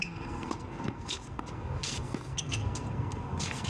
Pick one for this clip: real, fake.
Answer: fake